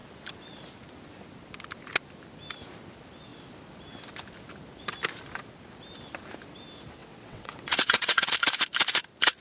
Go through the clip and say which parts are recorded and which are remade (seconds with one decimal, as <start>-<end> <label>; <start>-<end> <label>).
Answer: 0.0-7.0 recorded; 7.0-8.3 remade; 8.3-9.4 recorded